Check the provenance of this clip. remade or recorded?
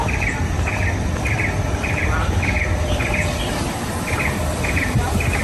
remade